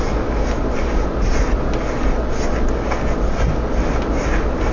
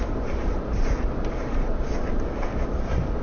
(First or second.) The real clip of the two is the first